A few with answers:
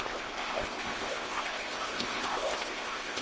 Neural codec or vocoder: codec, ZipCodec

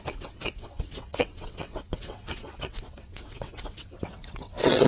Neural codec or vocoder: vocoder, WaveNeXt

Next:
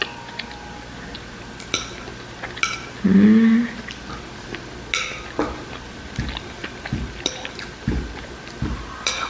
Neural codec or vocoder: none